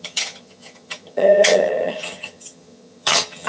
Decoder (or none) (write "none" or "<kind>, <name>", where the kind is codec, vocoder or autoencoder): vocoder, HiFi-GAN